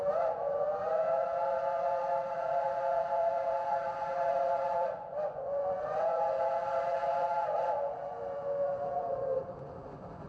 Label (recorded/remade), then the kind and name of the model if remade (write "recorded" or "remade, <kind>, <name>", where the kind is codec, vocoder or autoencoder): remade, vocoder, Vocos